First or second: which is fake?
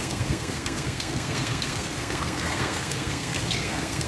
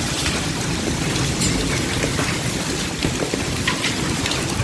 first